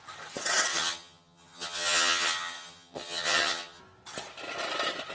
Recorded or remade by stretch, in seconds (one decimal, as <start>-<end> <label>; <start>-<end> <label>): 0.0-0.7 recorded; 0.7-3.8 remade; 3.8-5.1 recorded